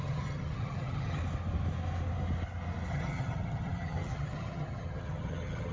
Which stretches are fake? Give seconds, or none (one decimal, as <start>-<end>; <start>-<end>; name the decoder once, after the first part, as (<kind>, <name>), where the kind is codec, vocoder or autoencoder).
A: 0.0-1.2 (vocoder, HiFi-GAN); 2.9-5.7